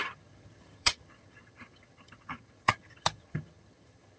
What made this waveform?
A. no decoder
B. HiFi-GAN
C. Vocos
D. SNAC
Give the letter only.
B